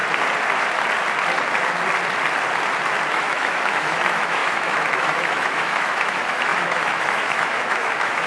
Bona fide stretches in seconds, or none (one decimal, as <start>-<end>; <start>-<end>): 0.0-3.1